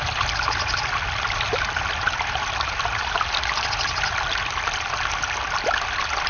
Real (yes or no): yes